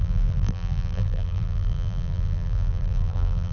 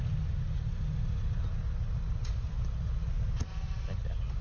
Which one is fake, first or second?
first